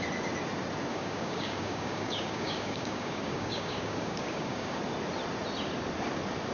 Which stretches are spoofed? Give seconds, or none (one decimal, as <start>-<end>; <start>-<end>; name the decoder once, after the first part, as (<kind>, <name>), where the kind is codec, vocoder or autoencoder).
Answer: 0.9-4.8 (codec, DAC)